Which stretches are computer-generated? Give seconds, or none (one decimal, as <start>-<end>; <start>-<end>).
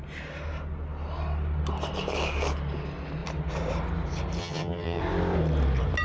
4.4-5.0